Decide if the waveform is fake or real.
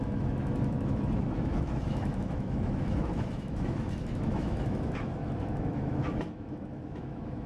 fake